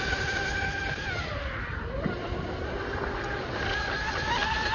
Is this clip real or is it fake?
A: real